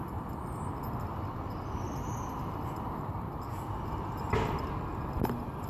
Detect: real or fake real